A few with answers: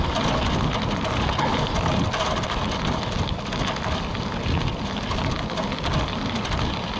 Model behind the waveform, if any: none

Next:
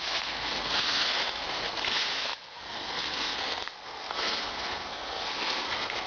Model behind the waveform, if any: codec, SNAC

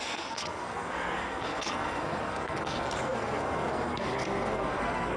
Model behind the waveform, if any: codec, SNAC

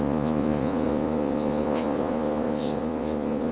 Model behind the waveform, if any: vocoder, Vocos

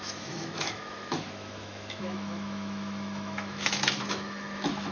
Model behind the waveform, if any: autoencoder, DAC-VAE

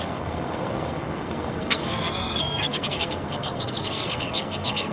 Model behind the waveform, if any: codec, SNAC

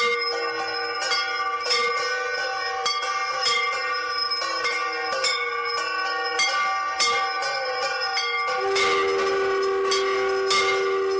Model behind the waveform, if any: none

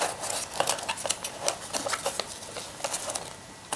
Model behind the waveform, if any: none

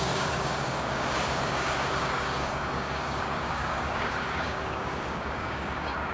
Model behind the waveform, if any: codec, DAC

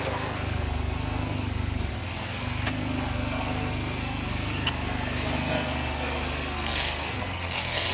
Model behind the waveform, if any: codec, SNAC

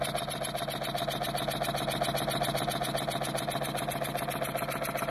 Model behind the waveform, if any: none